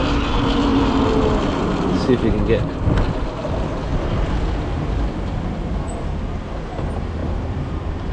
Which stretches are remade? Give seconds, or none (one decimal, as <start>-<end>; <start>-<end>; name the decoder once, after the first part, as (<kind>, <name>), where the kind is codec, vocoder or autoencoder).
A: 3.9-4.5 (vocoder, BigVGAN v2); 7.2-8.1